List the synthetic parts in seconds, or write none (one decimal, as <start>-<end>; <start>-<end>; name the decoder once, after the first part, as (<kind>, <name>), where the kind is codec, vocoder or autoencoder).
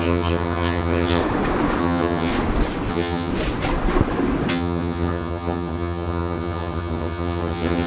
0.0-1.2 (vocoder, HiFi-GAN); 1.8-2.3; 2.9-3.3; 4.5-7.9